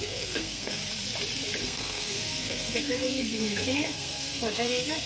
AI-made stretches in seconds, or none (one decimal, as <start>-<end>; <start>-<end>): 0.0-0.8; 1.6-5.1